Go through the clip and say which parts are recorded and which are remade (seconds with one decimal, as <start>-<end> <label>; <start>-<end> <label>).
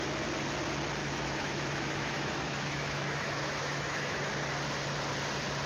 0.0-1.0 recorded; 1.0-4.3 remade; 4.3-5.7 recorded